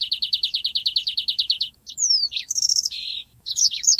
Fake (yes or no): yes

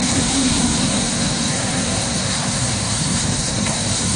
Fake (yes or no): yes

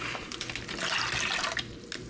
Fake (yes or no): no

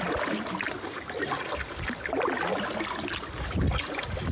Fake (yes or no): no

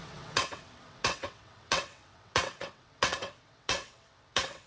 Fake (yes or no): yes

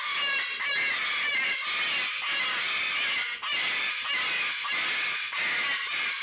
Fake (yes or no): no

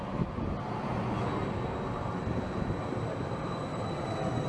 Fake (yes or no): no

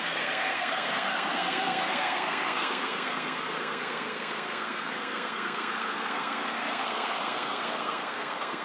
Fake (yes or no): yes